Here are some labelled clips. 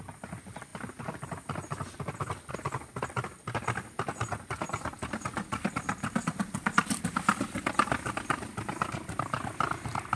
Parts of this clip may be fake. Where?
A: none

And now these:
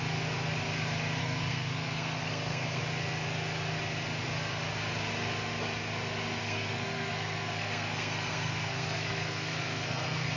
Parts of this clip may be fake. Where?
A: 1.2-2.8 (codec, SNAC); 6.4-10.4

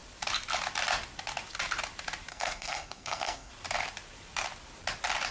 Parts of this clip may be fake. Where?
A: 2.3-3.5 (codec, SNAC)

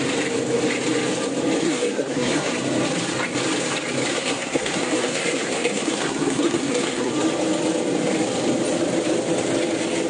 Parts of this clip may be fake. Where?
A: 1.6-2.5 (codec, SNAC); 4.1-7.1

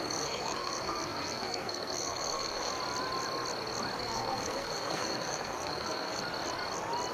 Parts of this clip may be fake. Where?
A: 0.0-2.7 (codec, SNAC); 4.0-6.2

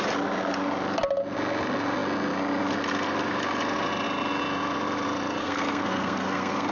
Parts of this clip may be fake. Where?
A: 5.4-6.7 (codec, SNAC)

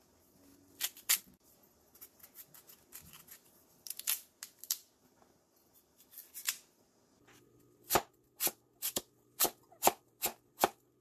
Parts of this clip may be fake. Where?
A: none